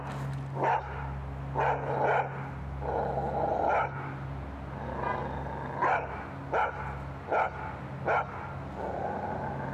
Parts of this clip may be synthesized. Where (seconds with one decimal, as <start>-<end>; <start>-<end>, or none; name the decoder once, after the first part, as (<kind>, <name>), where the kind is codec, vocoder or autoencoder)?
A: none

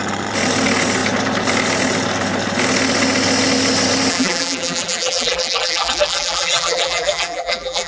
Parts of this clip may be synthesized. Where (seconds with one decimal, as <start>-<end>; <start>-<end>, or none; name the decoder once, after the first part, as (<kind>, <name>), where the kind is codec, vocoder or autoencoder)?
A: 4.1-7.9 (vocoder, BigVGAN v2)

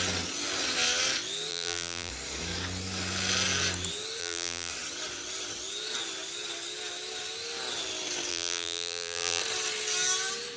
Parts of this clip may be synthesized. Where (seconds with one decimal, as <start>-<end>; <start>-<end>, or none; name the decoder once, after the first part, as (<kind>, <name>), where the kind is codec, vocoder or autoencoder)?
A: 1.5-2.1 (vocoder, BigVGAN v2); 4.2-4.7; 8.3-9.4